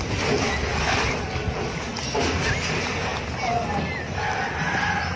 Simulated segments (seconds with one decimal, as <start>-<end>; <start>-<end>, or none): none